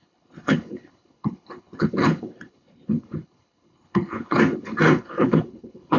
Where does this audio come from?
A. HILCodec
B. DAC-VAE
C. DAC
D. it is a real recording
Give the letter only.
A